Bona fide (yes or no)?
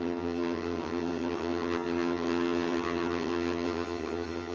no